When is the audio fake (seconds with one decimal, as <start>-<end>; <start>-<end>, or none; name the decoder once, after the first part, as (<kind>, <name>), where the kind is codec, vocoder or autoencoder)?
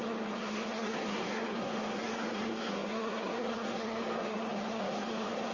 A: 0.0-5.5 (codec, SNAC)